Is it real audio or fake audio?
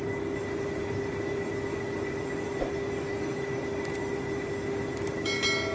real